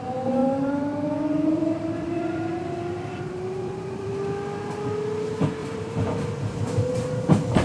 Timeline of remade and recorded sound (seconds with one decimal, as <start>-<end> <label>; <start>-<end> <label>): 0.0-0.4 recorded; 0.4-4.1 remade; 4.1-5.6 recorded; 5.6-7.6 remade